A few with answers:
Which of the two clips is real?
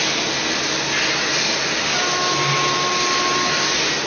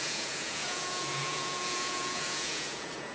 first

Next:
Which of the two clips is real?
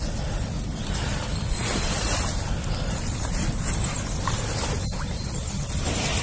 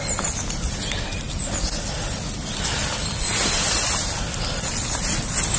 second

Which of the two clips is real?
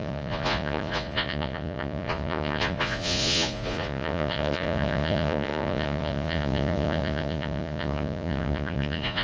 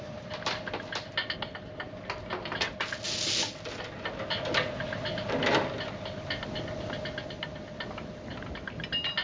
second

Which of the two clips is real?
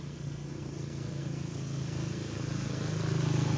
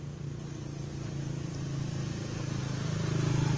second